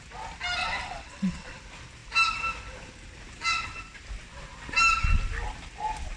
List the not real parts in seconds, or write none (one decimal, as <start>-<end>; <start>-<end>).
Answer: 0.6-1.6